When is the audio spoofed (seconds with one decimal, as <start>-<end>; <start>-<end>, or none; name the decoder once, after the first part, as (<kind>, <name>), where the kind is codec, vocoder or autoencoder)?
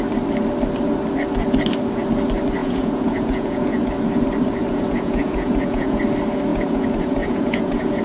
2.6-3.9 (vocoder, Vocos); 4.7-6.0; 6.5-8.0